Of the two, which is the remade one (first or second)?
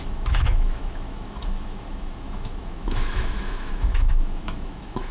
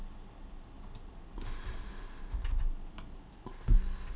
first